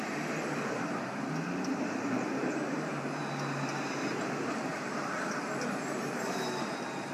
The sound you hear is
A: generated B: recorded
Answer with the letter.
B